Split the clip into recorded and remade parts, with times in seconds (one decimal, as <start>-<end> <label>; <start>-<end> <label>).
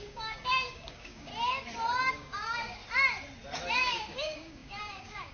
0.0-1.3 remade; 1.3-2.1 recorded; 2.1-2.8 remade; 2.8-3.8 recorded; 3.8-5.3 remade